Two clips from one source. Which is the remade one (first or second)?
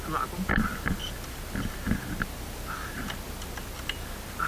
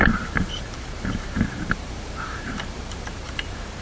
second